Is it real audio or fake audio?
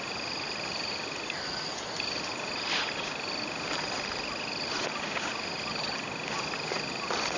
real